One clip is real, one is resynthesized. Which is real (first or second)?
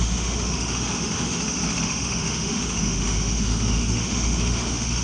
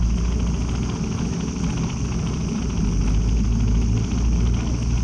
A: second